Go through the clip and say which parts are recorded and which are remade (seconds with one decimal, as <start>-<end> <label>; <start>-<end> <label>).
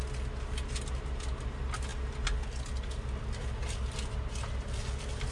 0.0-5.3 recorded